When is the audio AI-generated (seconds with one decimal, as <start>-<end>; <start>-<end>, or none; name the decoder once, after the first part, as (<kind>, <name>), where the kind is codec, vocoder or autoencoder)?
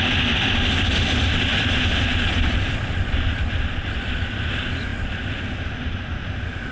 none